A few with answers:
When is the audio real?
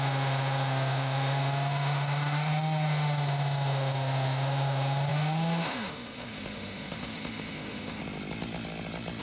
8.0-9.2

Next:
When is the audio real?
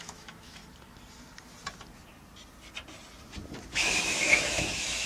0.6-3.7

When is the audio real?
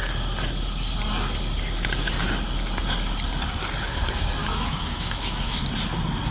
0.0-4.4; 5.6-6.3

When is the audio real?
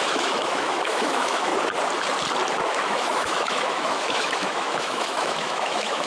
1.5-2.7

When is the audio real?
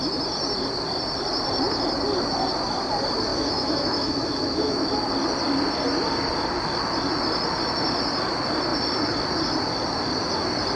0.0-3.3; 4.9-10.8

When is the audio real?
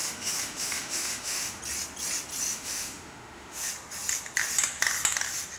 1.6-2.5; 3.7-5.6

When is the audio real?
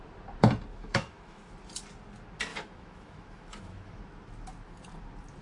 0.0-0.7; 1.5-2.5; 4.0-5.4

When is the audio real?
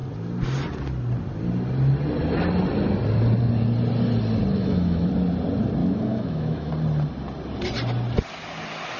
0.0-4.5; 5.1-5.8; 6.7-9.0